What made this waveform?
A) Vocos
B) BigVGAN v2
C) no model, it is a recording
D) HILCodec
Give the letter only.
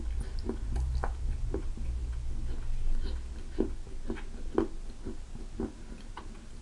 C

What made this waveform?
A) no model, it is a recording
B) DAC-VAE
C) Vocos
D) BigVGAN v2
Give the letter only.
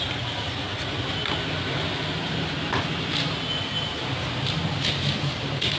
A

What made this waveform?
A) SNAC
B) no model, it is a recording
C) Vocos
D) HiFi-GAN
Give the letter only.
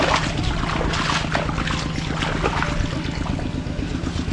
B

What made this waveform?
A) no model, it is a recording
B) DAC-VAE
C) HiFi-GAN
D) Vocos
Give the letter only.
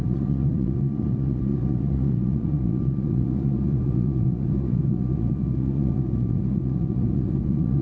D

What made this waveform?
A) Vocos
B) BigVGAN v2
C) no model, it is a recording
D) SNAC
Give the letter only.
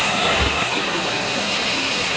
D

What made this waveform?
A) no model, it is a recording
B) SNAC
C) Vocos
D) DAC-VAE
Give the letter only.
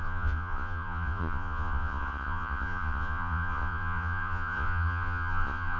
C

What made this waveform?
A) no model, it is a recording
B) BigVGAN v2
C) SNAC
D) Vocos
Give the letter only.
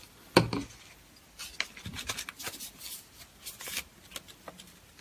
A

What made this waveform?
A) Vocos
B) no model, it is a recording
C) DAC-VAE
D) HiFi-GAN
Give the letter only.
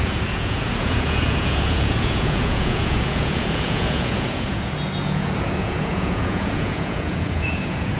A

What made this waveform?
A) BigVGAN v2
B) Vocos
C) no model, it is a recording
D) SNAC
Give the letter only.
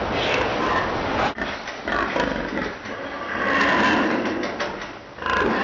C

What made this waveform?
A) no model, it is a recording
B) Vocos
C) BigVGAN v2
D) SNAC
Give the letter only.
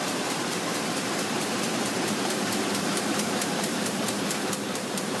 C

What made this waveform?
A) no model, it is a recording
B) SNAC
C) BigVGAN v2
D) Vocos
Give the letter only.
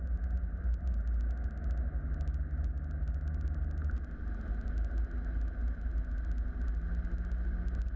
A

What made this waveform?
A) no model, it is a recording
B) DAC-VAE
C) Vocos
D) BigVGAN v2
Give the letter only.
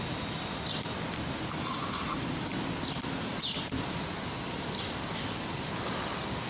A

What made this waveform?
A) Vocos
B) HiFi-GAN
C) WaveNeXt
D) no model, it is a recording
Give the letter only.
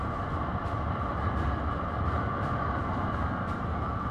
D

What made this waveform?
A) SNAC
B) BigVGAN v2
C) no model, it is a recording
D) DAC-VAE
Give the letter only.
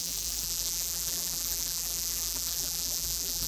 B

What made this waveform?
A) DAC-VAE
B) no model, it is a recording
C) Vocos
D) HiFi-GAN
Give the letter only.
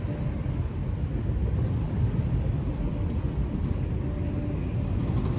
B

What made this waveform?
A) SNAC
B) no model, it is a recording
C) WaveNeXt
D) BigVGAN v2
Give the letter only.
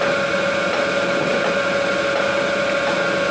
B